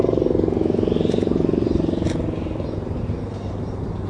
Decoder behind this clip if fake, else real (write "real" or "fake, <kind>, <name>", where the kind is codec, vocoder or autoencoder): real